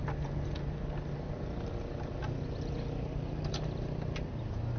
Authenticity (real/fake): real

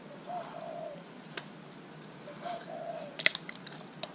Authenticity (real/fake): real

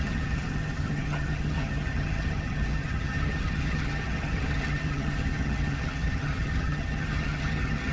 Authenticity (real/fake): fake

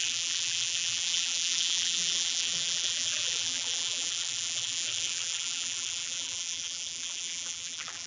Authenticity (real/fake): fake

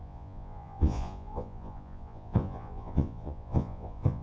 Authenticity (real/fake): fake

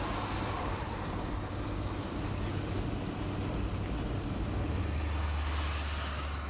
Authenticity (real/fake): real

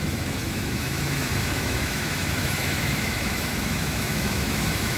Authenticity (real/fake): fake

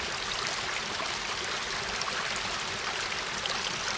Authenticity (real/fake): real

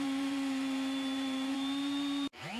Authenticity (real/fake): fake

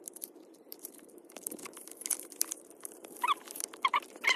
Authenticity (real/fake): fake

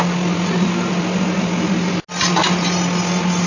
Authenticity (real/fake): real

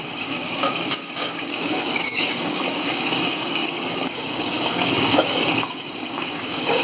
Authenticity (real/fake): fake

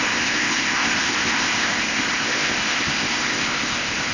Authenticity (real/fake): fake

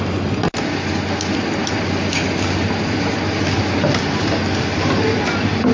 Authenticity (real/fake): real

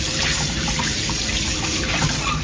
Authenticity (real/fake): fake